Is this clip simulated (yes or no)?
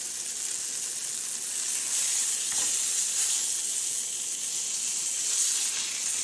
no